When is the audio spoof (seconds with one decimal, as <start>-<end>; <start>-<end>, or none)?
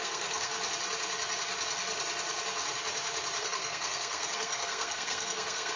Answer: 0.0-0.5; 3.4-5.8